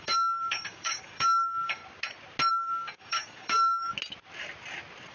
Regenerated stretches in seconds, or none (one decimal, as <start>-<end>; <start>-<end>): 0.0-1.8; 2.5-3.9